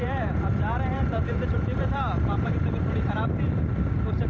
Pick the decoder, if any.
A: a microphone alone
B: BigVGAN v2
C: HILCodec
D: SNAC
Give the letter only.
B